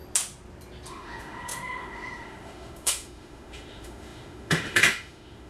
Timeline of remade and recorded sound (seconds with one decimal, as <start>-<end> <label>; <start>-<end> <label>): 0.0-0.9 recorded; 0.9-5.5 remade